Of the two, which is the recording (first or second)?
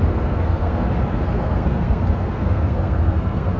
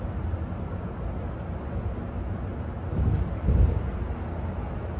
second